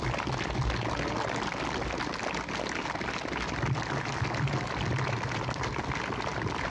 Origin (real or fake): real